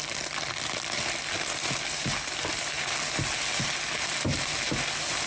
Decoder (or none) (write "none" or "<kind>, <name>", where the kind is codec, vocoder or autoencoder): none